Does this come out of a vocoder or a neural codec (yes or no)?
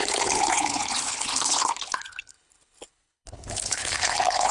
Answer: yes